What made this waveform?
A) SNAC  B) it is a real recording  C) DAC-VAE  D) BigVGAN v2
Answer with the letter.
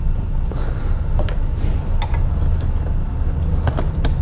B